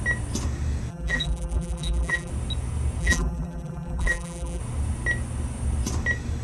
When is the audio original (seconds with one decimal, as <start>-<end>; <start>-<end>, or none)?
0.0-0.9; 2.3-3.0; 4.6-6.4